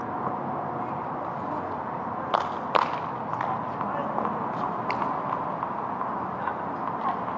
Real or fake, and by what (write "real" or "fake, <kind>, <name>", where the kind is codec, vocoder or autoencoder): real